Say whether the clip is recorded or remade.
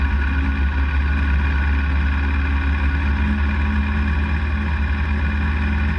recorded